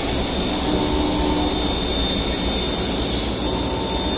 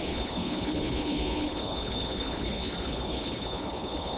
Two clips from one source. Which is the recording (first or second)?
first